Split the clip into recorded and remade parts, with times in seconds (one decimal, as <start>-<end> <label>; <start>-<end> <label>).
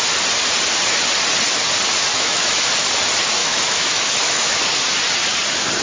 0.0-2.1 recorded; 2.1-2.7 remade; 2.7-3.4 recorded; 3.4-4.6 remade; 4.6-5.8 recorded